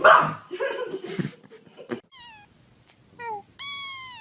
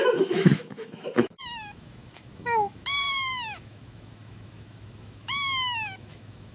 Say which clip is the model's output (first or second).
second